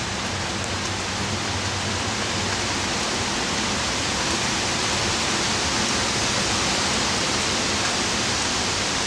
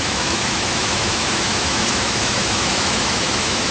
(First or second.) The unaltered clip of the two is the first